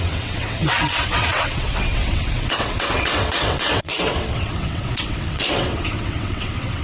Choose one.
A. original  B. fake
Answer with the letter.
B